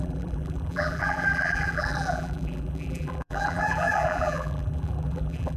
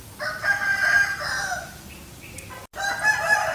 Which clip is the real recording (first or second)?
second